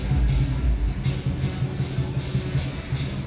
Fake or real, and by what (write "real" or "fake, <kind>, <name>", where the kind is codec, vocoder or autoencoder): real